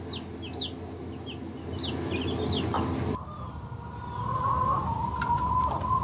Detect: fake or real real